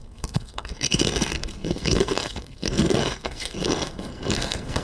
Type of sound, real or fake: fake